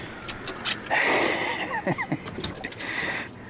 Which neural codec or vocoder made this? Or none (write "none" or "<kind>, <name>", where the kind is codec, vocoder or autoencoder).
none